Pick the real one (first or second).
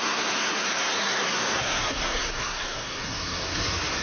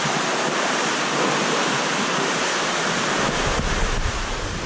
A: second